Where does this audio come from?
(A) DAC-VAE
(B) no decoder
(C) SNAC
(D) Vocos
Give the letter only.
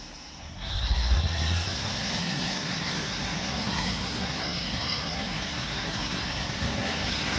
C